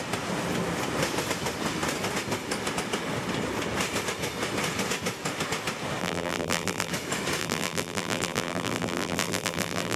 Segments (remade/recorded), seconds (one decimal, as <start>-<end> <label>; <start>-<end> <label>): 0.0-6.0 recorded; 6.0-6.9 remade; 6.9-7.4 recorded; 7.4-10.0 remade